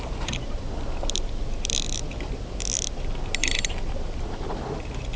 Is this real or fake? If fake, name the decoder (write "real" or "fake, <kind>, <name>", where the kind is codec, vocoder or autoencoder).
real